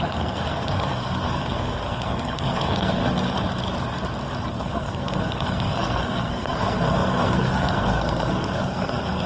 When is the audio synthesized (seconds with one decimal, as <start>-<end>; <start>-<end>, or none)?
0.0-3.0; 4.5-9.3